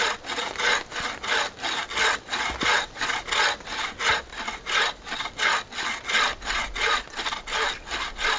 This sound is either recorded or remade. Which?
recorded